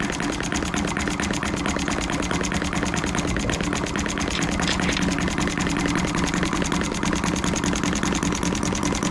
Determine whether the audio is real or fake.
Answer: real